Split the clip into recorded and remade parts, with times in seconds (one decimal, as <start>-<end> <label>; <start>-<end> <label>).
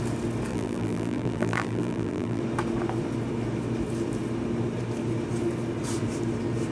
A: 0.0-0.5 recorded; 0.5-2.4 remade; 2.4-6.7 recorded